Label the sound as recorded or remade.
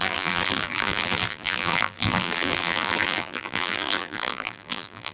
remade